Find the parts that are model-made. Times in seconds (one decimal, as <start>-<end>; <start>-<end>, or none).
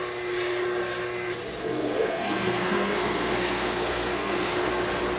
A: 1.6-4.7